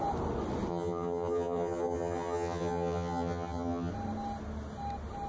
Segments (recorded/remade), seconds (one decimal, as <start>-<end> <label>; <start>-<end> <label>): 0.0-0.7 recorded; 0.7-3.9 remade; 3.9-5.3 recorded